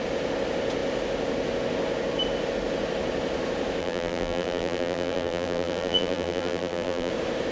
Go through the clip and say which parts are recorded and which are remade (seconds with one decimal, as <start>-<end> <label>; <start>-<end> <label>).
0.0-3.8 recorded; 3.8-7.1 remade; 7.1-7.5 recorded